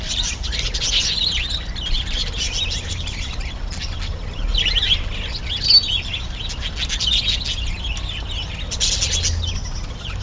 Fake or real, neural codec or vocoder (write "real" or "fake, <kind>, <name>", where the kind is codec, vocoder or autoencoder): real